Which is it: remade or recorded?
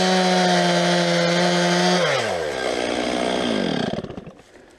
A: recorded